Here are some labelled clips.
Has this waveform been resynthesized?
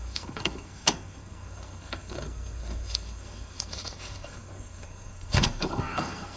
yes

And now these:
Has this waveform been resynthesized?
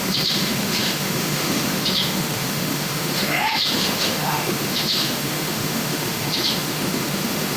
yes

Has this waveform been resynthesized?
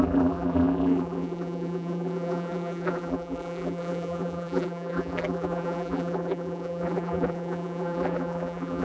yes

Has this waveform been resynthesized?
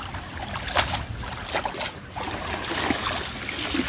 no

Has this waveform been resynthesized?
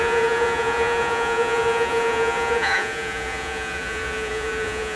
yes